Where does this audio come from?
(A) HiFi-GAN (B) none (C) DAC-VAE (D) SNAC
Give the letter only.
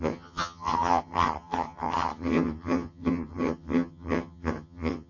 A